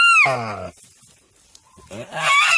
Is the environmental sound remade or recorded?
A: recorded